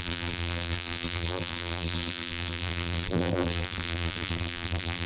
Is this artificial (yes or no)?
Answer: yes